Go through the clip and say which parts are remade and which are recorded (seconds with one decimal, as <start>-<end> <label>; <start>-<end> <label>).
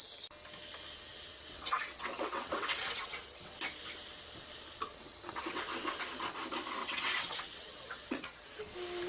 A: 0.0-1.1 recorded; 1.1-3.5 remade; 3.5-4.9 recorded; 4.9-5.6 remade; 5.6-6.8 recorded; 6.8-8.6 remade; 8.6-9.1 recorded